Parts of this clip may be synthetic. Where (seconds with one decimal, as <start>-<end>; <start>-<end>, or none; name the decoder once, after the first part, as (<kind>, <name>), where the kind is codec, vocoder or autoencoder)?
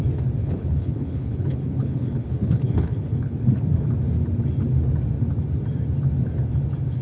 0.4-3.4 (codec, HILCodec)